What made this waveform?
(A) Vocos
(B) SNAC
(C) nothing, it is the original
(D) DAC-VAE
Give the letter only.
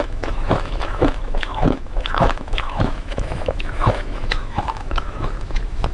D